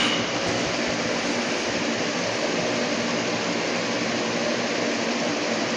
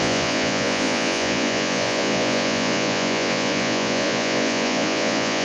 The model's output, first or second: second